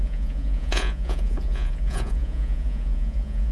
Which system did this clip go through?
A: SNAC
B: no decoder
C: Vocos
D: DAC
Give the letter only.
C